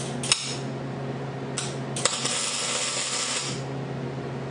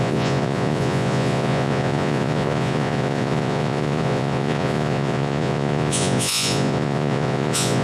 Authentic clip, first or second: first